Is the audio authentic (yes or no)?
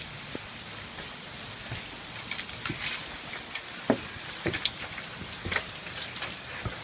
yes